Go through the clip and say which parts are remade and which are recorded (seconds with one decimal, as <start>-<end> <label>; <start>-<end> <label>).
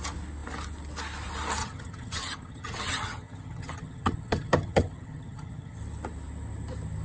0.0-1.6 recorded; 1.6-5.8 remade; 5.8-7.0 recorded